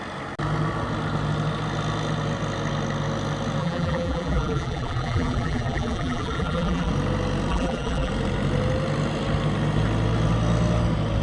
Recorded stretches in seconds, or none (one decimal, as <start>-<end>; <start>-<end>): 0.0-3.6; 6.9-7.5; 8.1-11.2